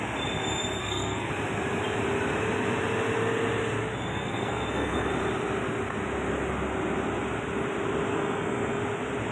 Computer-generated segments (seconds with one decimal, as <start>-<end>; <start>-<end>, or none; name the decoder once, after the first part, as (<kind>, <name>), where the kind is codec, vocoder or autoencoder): 0.8-1.3 (codec, SNAC); 4.1-5.1; 8.1-8.8